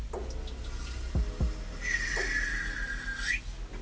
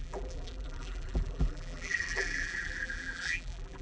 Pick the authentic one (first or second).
first